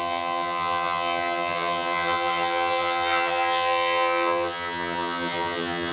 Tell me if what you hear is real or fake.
fake